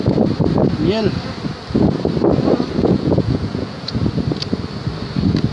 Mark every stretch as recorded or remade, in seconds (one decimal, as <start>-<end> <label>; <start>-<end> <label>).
0.0-2.8 recorded; 2.8-4.0 remade; 4.0-5.5 recorded